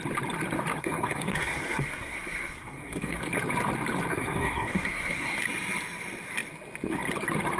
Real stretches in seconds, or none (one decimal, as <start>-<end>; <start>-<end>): 0.0-0.8; 3.2-4.1; 5.4-7.6